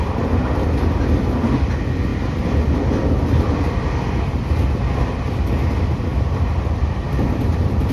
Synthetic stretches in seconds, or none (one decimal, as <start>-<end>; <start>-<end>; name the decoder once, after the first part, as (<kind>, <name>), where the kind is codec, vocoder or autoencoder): 2.1-4.4 (vocoder, BigVGAN v2); 6.1-7.9